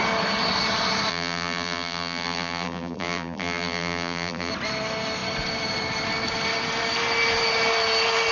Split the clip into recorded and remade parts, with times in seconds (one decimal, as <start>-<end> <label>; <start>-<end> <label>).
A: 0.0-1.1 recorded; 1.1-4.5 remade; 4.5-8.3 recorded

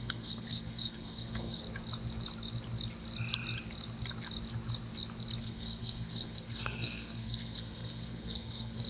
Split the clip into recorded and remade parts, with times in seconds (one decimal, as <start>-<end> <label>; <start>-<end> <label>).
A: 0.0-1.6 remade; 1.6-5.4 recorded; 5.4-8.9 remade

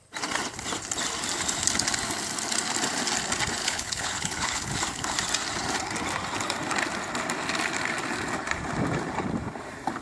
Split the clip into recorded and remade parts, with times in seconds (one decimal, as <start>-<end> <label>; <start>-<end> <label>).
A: 0.0-3.6 recorded; 3.6-4.6 remade; 4.6-10.0 recorded

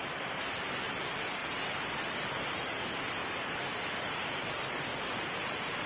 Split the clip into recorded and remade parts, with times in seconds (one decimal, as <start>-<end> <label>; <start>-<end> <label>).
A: 0.0-3.2 remade; 3.2-4.0 recorded; 4.0-5.9 remade

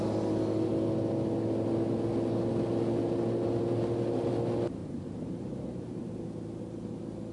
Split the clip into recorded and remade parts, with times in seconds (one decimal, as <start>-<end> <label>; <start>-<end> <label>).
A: 0.0-4.8 recorded; 4.8-6.1 remade; 6.1-7.3 recorded

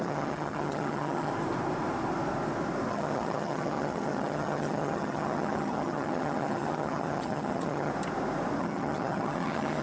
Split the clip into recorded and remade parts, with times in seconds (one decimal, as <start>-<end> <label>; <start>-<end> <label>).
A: 0.0-1.3 remade; 1.3-2.9 recorded; 2.9-7.9 remade; 7.9-8.6 recorded; 8.6-9.8 remade